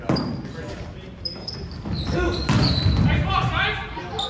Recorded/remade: recorded